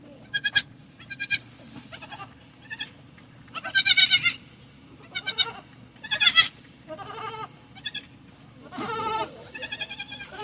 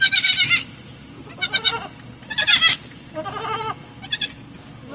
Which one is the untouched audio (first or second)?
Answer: second